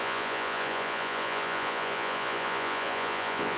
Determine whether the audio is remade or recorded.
remade